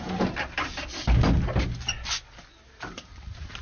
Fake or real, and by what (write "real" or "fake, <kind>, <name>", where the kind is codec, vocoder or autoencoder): real